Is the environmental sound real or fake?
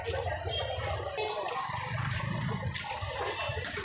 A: real